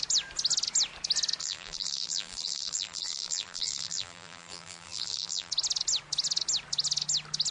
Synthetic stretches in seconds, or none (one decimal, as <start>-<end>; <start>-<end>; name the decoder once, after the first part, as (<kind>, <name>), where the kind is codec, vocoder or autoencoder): 1.4-5.5 (vocoder, BigVGAN v2)